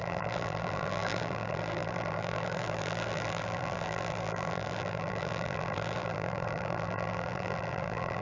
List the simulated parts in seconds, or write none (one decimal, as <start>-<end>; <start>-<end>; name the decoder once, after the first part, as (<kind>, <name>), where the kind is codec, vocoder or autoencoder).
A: 0.0-8.2 (vocoder, BigVGAN v2)